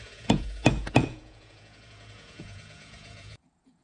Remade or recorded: remade